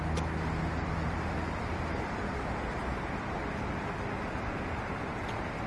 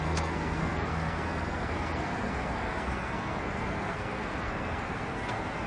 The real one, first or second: first